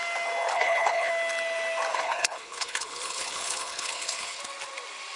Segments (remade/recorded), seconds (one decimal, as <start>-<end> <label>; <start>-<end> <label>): 0.0-0.5 recorded; 0.5-1.1 remade; 1.1-1.9 recorded; 1.9-4.4 remade; 4.4-5.2 recorded